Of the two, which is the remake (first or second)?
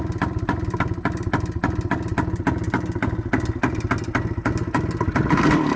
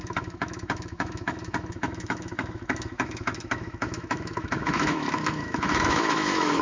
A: second